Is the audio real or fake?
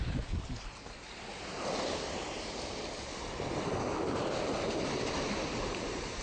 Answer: real